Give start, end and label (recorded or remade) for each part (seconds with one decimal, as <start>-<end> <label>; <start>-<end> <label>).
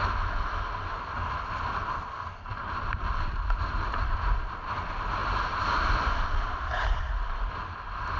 0.0-2.5 recorded; 2.5-4.6 remade; 4.6-5.2 recorded; 5.2-7.1 remade; 7.1-8.2 recorded